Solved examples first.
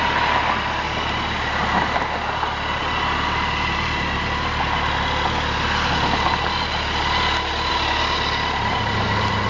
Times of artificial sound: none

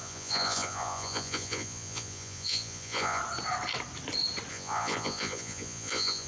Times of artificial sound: 0.0-3.2; 4.5-6.3